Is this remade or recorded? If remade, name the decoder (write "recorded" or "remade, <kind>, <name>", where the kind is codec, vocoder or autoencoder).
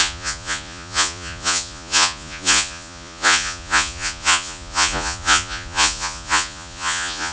remade, vocoder, Vocos